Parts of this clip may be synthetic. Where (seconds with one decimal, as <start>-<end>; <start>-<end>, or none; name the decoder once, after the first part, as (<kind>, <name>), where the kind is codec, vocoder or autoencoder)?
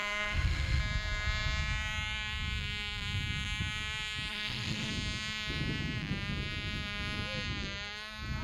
0.0-0.8 (autoencoder, DAC-VAE); 4.3-4.9